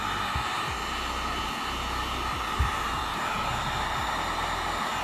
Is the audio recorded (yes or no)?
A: yes